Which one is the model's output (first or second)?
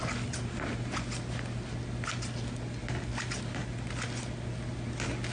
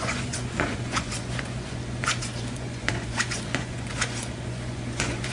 second